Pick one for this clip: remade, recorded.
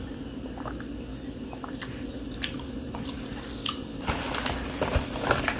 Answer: recorded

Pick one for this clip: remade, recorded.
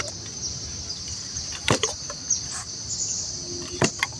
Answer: recorded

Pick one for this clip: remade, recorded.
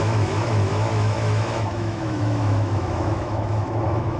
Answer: remade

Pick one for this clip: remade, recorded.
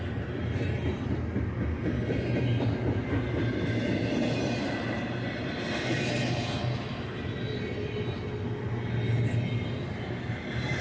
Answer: recorded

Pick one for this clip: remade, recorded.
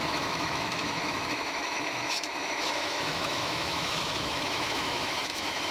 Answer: remade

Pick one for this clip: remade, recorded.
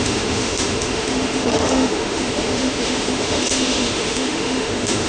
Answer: remade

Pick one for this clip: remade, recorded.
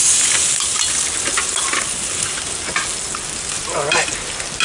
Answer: recorded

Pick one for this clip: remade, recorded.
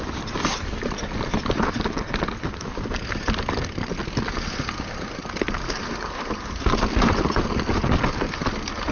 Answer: recorded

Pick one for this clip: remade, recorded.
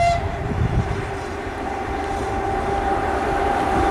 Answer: remade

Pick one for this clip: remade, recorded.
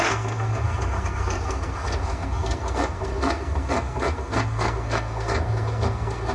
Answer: remade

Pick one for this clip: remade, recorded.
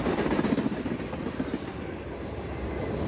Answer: remade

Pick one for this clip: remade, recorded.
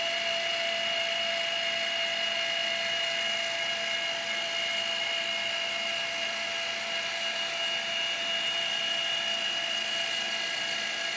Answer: recorded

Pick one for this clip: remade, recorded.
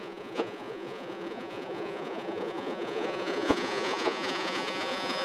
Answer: remade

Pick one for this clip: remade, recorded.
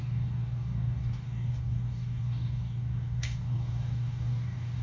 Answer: remade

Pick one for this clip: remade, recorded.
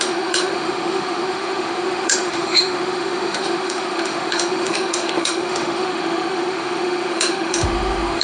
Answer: remade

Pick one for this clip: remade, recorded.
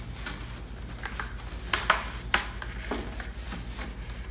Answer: recorded